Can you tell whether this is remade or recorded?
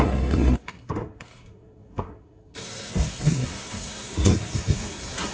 remade